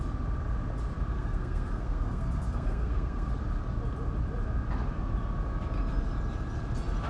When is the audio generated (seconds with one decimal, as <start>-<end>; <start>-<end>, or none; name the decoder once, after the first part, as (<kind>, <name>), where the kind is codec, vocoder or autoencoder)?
1.1-3.3 (codec, SNAC)